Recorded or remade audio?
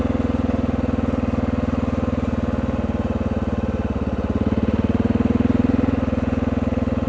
recorded